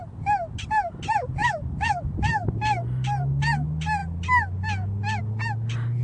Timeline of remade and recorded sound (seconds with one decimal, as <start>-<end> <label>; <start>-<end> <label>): 0.0-6.0 recorded